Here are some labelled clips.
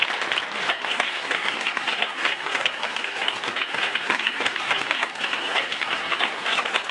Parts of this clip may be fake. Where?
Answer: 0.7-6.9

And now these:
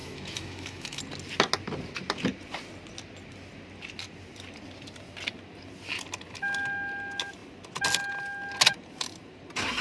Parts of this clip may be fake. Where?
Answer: 0.0-1.0